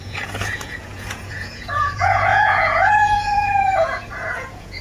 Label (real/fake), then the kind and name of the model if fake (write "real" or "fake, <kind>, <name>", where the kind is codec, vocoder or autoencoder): fake, vocoder, Vocos